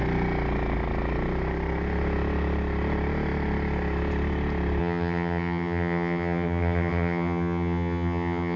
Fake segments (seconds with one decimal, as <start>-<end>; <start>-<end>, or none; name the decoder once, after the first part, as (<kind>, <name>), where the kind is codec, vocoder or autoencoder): 4.8-8.6 (vocoder, HiFi-GAN)